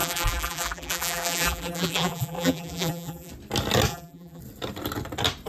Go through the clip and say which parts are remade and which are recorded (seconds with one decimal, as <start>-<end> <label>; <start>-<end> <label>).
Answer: 0.0-3.3 remade; 3.3-3.9 recorded; 3.9-4.4 remade; 4.4-5.5 recorded